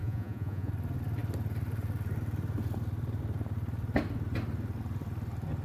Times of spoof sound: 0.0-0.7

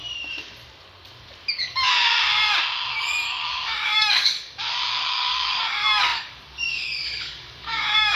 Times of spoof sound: 1.5-2.1; 2.9-8.2

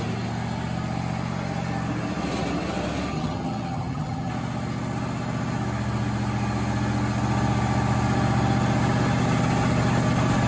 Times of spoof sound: 3.1-4.3